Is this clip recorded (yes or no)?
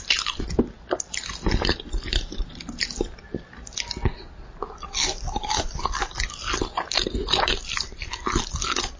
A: yes